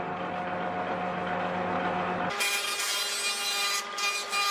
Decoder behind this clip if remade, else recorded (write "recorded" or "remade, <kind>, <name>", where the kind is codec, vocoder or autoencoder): recorded